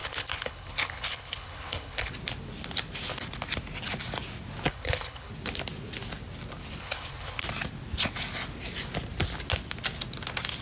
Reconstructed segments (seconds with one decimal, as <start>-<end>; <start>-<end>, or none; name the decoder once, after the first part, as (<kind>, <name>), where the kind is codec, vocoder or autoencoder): 0.0-2.1 (codec, HILCodec); 4.7-5.3; 6.8-7.4